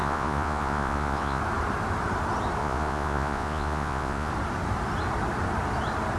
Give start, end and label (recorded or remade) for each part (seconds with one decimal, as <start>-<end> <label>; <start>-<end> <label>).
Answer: 0.0-1.4 remade; 1.4-2.6 recorded; 2.6-4.3 remade; 4.3-6.2 recorded